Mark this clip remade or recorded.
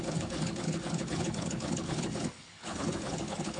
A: remade